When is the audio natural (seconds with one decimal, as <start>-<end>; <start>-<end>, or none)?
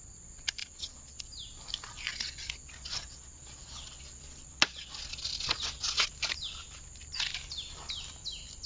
0.0-0.6; 1.2-2.1; 6.1-8.7